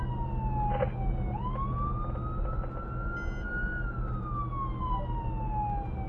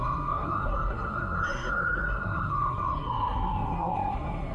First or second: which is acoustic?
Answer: first